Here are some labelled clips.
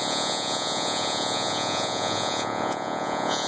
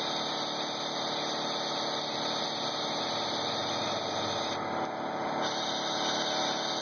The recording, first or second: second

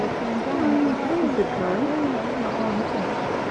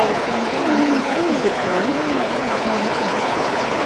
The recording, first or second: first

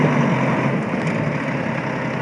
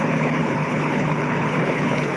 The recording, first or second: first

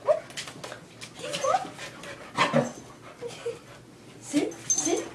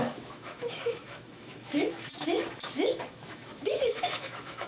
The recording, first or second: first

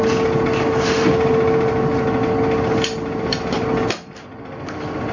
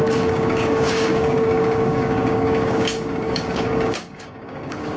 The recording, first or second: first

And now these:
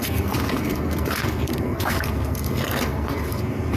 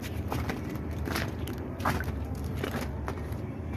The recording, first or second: second